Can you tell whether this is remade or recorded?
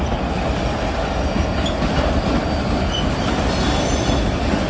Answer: recorded